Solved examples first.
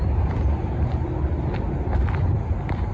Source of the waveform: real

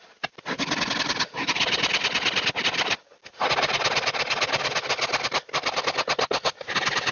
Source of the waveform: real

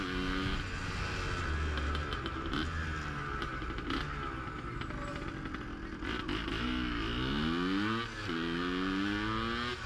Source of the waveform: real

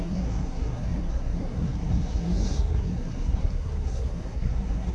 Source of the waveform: fake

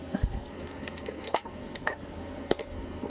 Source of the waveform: fake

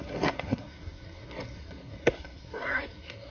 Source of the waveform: fake